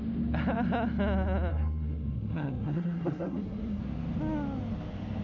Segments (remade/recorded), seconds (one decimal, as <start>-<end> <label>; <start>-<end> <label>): 0.0-1.5 recorded; 1.5-3.8 remade; 3.8-5.2 recorded